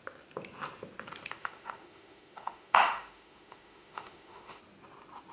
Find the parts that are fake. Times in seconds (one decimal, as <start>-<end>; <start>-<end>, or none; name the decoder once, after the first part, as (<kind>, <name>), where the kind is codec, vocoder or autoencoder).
1.4-4.6 (autoencoder, DAC-VAE)